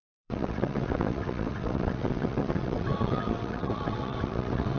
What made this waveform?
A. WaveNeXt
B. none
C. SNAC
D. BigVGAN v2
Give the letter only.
A